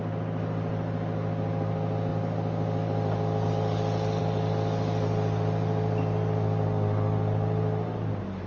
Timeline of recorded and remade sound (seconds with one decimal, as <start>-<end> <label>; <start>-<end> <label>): 0.0-8.5 recorded